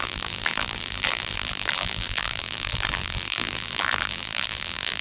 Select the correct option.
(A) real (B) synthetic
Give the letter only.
B